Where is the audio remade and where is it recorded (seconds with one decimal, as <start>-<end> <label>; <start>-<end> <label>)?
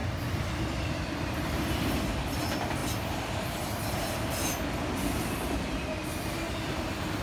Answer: 0.0-7.2 recorded